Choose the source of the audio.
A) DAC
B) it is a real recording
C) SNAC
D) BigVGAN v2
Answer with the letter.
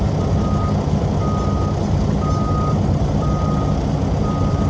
B